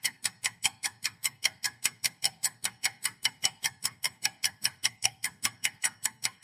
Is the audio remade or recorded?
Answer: remade